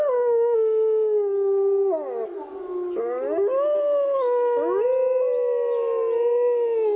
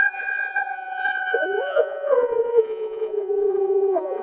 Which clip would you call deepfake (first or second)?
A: second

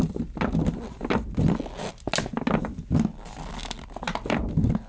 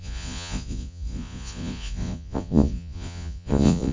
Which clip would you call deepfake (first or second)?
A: second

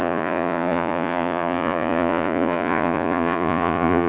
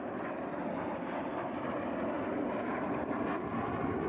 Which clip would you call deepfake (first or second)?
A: first